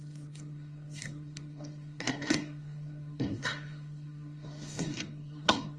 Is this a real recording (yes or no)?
no